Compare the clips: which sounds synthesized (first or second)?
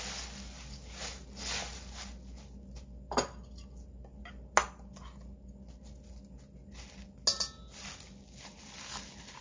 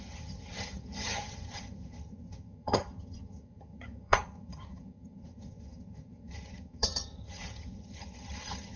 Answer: second